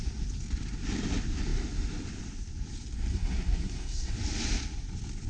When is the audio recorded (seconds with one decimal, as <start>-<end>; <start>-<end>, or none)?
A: 0.0-3.1; 4.1-5.3